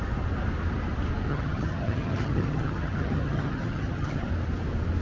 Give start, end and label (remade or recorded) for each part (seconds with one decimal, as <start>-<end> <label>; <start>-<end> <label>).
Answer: 0.0-1.3 recorded; 1.3-4.3 remade; 4.3-5.0 recorded